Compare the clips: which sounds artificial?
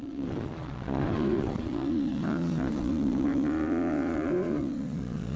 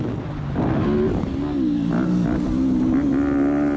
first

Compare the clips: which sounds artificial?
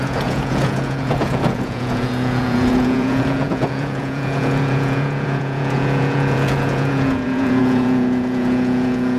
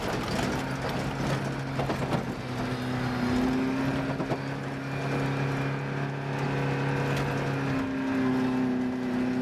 first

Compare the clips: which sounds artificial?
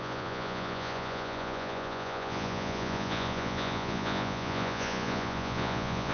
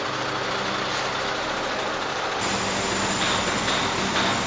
first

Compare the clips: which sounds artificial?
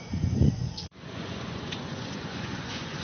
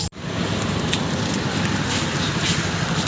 first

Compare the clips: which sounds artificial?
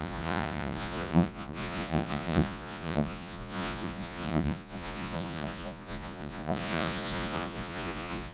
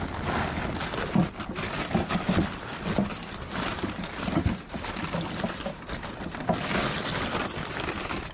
first